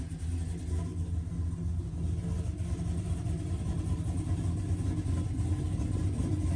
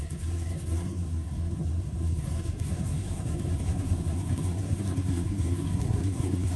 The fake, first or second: second